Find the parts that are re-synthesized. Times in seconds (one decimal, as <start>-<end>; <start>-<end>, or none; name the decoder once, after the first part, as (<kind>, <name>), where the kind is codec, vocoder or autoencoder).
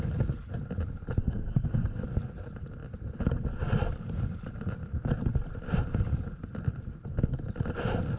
1.2-2.0 (codec, SNAC)